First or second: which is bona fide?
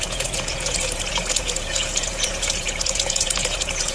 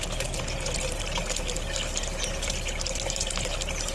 second